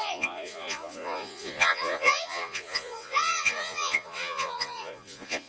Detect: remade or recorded remade